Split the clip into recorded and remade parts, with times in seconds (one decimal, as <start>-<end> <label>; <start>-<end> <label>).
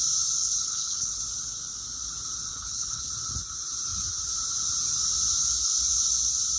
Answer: 0.0-0.4 recorded; 0.4-1.2 remade; 1.2-2.5 recorded; 2.5-3.1 remade; 3.1-6.6 recorded